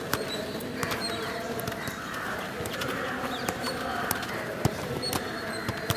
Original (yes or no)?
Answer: no